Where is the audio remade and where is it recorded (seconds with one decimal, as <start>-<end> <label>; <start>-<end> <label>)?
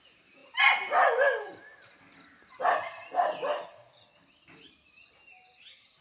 0.0-6.0 recorded